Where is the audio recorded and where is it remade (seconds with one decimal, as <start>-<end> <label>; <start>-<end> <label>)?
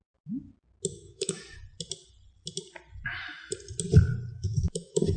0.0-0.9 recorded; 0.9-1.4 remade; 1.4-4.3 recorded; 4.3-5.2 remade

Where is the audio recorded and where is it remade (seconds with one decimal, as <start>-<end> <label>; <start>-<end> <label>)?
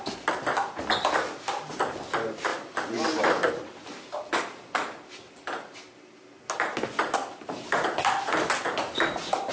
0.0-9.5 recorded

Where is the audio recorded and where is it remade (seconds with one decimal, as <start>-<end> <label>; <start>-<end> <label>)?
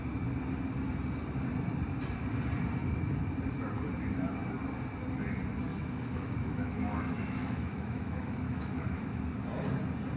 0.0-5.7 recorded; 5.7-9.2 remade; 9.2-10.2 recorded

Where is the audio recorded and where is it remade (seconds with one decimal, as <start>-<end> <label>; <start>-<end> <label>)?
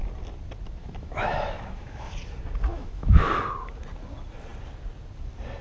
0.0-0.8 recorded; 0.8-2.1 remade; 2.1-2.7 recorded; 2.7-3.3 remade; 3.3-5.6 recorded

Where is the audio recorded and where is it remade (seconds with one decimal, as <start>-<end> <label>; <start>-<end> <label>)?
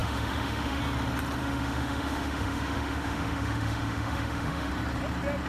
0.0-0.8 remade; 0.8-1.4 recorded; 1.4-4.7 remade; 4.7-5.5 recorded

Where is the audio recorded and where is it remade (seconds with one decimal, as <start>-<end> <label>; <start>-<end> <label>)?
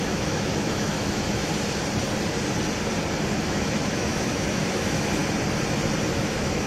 0.0-1.5 remade; 1.5-3.3 recorded; 3.3-5.2 remade; 5.2-6.1 recorded; 6.1-6.7 remade